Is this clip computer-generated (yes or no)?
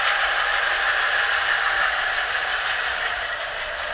no